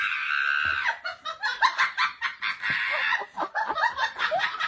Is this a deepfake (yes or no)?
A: no